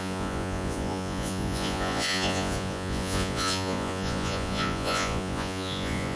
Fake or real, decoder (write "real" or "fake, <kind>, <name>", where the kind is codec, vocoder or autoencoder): fake, vocoder, Vocos